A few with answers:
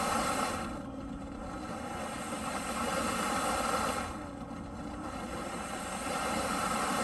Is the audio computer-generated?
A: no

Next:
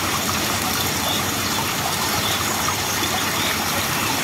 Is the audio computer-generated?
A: yes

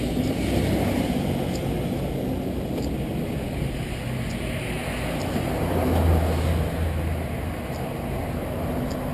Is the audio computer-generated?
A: no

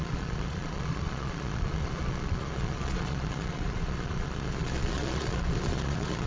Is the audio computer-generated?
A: yes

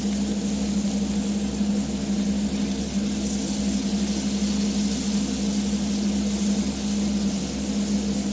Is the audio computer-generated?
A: no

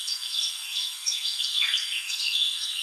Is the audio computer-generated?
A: yes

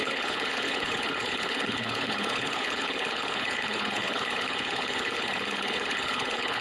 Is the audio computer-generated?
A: yes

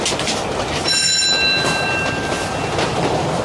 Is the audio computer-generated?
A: no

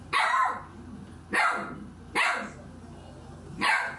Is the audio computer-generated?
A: no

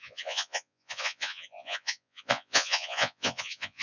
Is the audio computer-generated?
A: yes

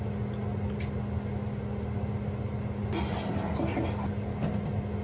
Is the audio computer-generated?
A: no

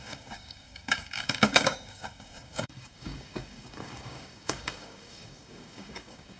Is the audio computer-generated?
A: yes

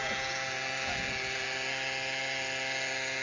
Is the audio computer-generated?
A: no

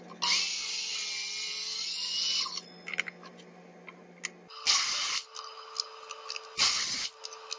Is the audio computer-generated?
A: no